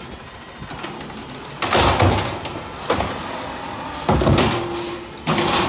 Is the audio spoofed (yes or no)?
no